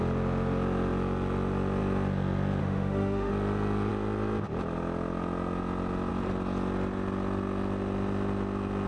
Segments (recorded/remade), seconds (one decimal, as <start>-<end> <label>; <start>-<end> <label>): 0.0-2.6 recorded; 2.6-3.3 remade; 3.3-8.9 recorded

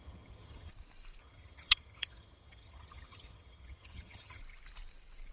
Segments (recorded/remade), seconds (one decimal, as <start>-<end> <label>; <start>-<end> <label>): 0.0-0.7 remade; 0.7-1.2 recorded; 1.2-4.4 remade; 4.4-5.3 recorded

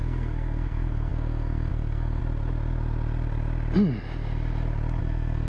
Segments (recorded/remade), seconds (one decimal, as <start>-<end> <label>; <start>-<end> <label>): 0.0-2.2 remade; 2.2-5.0 recorded; 5.0-5.5 remade